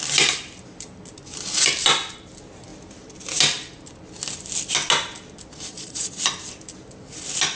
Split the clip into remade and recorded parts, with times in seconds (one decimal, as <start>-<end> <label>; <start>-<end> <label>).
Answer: 0.0-5.7 recorded; 5.7-6.2 remade; 6.2-7.6 recorded